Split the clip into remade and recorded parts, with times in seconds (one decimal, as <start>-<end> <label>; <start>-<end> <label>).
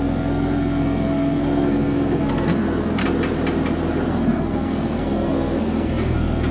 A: 0.0-3.0 remade; 3.0-4.1 recorded; 4.1-6.5 remade